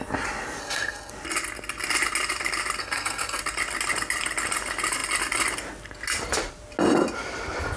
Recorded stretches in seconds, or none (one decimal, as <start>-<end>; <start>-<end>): 0.0-0.6; 1.1-2.8; 3.4-7.8